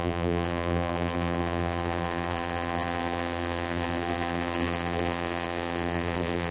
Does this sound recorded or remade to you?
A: remade